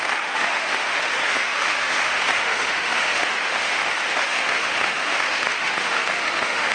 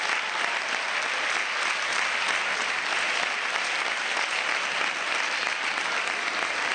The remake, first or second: first